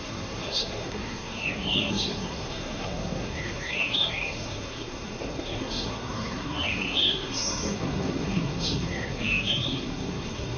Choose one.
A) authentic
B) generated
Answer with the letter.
B